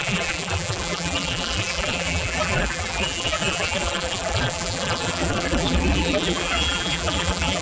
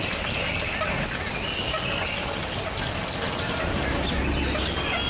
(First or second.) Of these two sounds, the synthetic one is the first